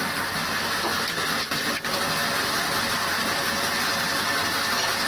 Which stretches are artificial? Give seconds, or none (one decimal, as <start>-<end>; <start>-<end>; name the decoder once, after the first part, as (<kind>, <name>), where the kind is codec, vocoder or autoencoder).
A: none